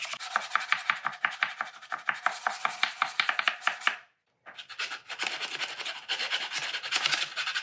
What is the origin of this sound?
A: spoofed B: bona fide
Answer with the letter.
B